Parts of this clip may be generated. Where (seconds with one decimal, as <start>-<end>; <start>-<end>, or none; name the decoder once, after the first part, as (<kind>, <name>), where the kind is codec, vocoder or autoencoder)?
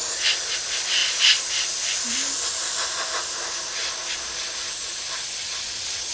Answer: 5.4-6.1 (vocoder, WaveNeXt)